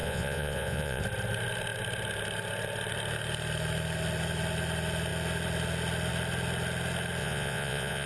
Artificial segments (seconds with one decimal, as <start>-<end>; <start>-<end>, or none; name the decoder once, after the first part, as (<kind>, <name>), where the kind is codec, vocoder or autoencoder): 0.0-1.0 (vocoder, Vocos); 7.2-8.1